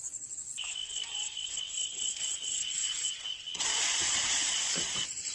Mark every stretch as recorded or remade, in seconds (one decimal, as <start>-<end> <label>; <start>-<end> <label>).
0.0-0.5 remade; 0.5-2.1 recorded; 2.1-5.3 remade